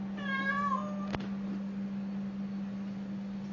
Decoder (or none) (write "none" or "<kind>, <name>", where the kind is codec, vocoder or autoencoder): none